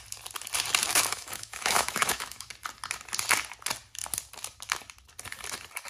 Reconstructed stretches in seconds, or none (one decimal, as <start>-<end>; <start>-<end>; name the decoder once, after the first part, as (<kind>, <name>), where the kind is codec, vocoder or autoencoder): 0.8-2.5 (autoencoder, DAC-VAE)

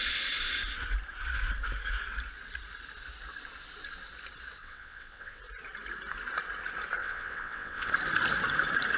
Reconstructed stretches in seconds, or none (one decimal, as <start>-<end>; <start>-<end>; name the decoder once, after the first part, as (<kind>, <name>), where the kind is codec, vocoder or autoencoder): 4.6-5.4 (vocoder, WaveNeXt); 7.0-7.9

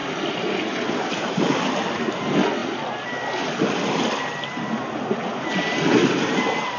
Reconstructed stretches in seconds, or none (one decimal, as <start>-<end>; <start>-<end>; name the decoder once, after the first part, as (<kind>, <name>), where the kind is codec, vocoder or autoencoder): none

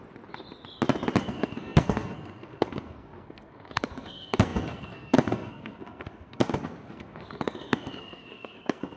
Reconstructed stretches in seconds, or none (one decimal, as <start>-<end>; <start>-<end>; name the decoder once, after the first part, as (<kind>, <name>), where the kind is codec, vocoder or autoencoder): 1.2-9.0 (codec, SNAC)

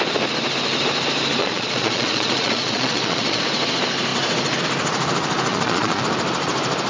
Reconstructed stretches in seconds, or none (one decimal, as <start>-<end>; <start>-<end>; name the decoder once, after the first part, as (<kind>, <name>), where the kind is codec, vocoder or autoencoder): 1.4-3.4 (vocoder, Vocos); 5.5-6.0